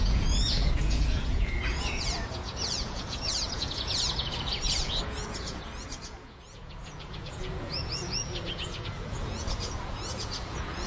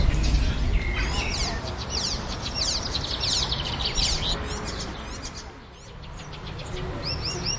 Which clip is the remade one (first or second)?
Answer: first